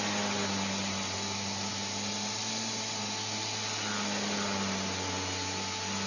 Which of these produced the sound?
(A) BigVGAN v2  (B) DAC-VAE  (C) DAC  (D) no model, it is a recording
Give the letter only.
D